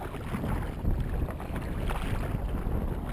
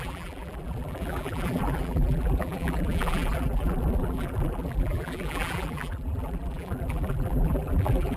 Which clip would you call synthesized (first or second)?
second